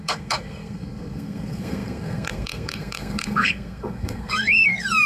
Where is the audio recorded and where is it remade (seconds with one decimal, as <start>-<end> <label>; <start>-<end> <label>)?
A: 0.0-5.1 remade